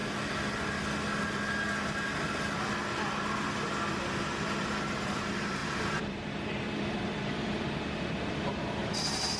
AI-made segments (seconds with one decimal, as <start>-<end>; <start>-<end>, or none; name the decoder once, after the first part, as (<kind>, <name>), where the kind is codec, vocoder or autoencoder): 3.9-9.4 (vocoder, BigVGAN v2)